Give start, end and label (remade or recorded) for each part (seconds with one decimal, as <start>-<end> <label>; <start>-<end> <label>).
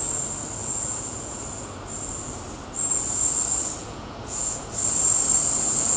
0.0-0.6 recorded; 0.6-1.4 remade; 1.4-3.8 recorded; 3.8-4.7 remade; 4.7-6.0 recorded